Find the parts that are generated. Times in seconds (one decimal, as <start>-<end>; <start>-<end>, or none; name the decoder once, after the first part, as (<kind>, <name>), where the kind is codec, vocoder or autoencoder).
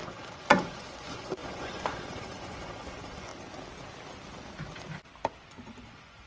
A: 0.0-3.3 (vocoder, Vocos); 5.8-6.3